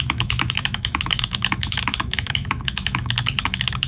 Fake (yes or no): yes